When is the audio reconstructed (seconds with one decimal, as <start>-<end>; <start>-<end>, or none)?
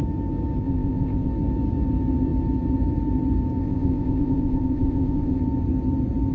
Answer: 0.6-1.3; 3.6-5.4